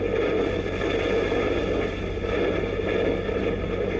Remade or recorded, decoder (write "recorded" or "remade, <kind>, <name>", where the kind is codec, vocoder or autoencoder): recorded